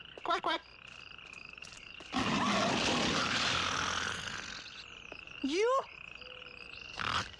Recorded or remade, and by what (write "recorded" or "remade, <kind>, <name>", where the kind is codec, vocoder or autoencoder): recorded